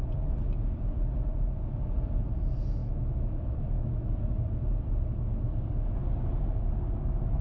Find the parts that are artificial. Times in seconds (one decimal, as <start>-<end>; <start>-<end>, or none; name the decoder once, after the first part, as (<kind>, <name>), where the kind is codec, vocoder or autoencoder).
2.8-4.1 (autoencoder, DAC-VAE)